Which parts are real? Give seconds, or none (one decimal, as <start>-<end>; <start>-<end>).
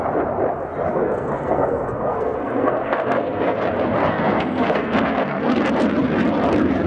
0.0-0.9; 3.6-4.0; 5.6-6.9